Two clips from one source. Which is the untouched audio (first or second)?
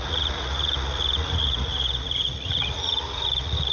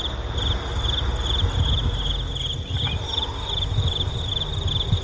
second